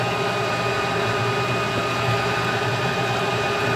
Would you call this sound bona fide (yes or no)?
yes